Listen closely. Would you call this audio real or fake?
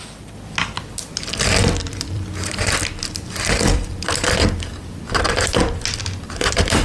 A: fake